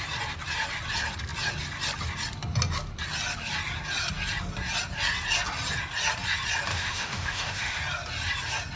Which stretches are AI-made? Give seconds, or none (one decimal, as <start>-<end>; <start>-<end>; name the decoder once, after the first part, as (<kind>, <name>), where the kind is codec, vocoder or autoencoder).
6.7-7.8 (autoencoder, DAC-VAE)